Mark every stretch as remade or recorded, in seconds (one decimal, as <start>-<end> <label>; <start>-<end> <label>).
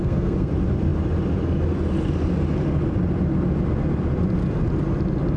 0.0-0.5 remade; 0.5-5.4 recorded